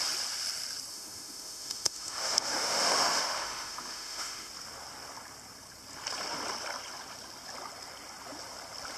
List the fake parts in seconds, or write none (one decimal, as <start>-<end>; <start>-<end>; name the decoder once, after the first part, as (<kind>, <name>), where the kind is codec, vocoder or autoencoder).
0.9-4.5 (autoencoder, DAC-VAE)